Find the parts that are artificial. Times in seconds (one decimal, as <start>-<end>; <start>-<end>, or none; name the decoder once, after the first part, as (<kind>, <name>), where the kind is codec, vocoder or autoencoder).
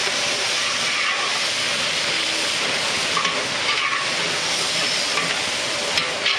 0.0-0.9 (vocoder, BigVGAN v2)